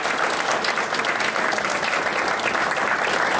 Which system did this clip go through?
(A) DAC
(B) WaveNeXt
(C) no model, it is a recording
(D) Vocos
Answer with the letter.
C